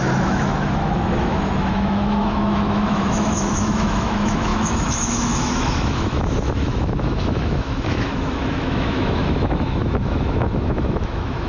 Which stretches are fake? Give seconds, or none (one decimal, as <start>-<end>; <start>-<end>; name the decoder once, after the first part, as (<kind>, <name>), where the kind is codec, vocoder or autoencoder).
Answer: 0.0-11.5 (autoencoder, DAC-VAE)